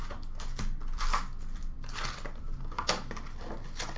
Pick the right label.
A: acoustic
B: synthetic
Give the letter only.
A